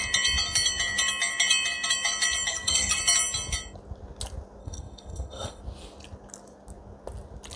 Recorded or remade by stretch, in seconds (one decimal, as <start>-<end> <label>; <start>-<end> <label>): 0.0-2.5 recorded; 2.5-3.0 remade; 3.0-4.6 recorded; 4.6-5.6 remade; 5.6-7.6 recorded